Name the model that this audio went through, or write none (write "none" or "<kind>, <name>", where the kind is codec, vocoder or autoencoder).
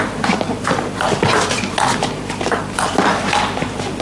none